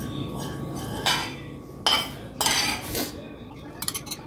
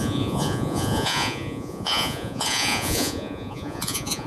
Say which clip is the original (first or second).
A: first